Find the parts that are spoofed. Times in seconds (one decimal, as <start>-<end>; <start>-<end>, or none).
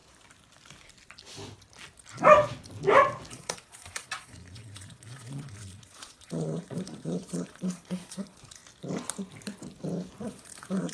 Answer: 3.3-8.6; 10.2-10.9